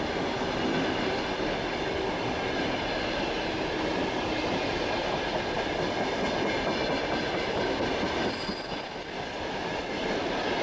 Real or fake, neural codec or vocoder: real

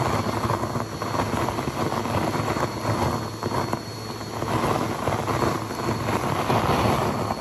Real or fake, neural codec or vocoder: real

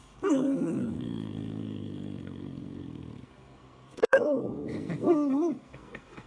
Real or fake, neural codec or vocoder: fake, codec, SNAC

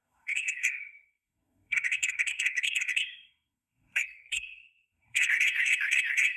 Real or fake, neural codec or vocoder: fake, codec, SNAC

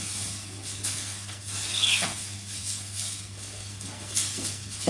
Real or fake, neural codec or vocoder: fake, codec, SNAC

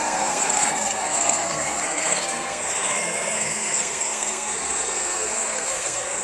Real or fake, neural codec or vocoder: fake, codec, SNAC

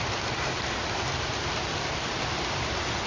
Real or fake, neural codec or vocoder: real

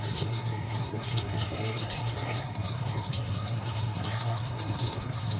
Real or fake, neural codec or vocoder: fake, codec, SNAC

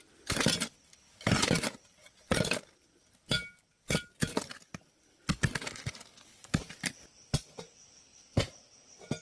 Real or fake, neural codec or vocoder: real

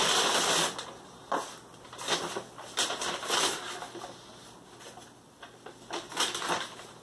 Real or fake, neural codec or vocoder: real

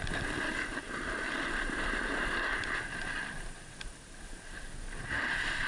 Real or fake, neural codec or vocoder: real